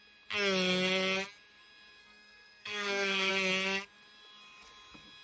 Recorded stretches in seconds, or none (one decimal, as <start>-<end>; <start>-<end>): 0.0-2.0; 3.3-5.2